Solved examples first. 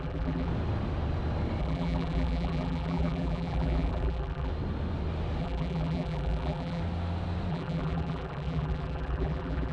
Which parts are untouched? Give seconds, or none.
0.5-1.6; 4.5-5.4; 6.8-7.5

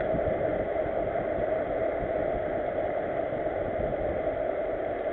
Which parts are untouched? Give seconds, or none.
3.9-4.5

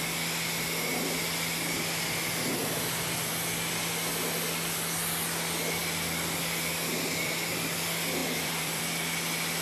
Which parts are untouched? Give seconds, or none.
0.0-8.2; 8.8-9.6

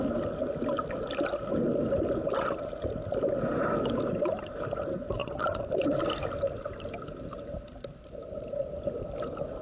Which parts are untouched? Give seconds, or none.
0.0-9.6

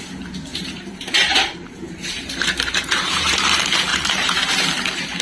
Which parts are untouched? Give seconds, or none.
0.0-0.5; 3.4-3.9; 4.4-5.2

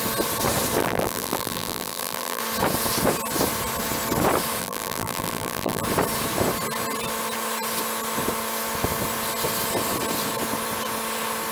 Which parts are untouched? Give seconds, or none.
0.0-0.8; 2.4-4.6; 5.8-11.5

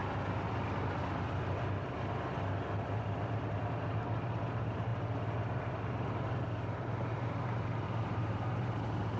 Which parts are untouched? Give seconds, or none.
0.0-2.8